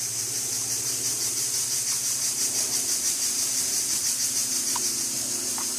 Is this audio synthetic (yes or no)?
yes